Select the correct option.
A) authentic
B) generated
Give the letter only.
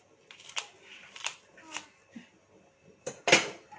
A